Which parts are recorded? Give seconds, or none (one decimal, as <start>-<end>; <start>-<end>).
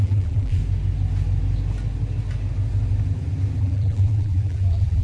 0.6-3.6